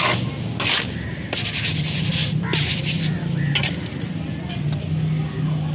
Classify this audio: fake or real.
real